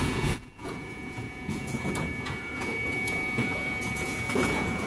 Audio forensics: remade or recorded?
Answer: remade